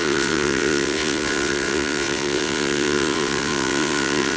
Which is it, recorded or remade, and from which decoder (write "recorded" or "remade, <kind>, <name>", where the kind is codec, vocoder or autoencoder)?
remade, vocoder, WaveNeXt